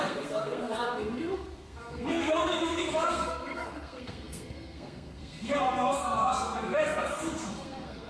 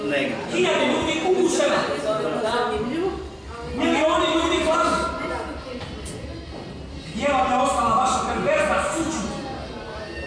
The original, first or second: second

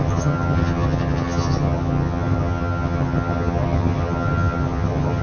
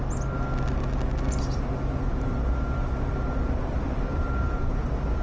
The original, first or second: second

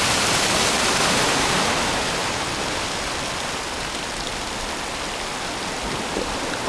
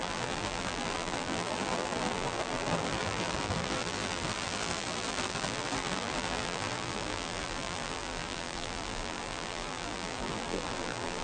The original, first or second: first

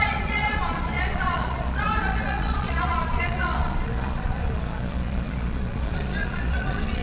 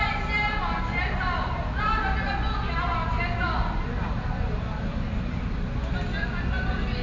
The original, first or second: second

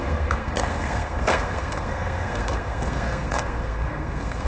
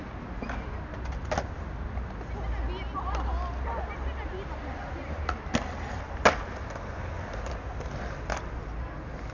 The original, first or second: second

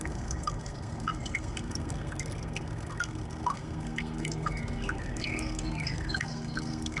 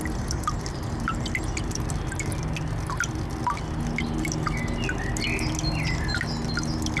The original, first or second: second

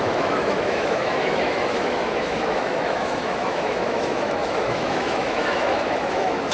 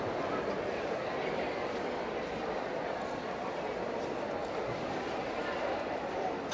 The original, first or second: second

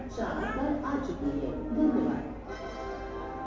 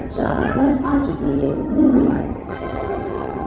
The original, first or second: first